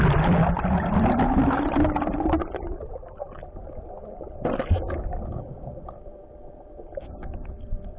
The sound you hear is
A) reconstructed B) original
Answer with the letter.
A